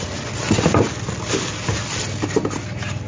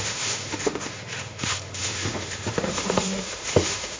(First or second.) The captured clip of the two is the first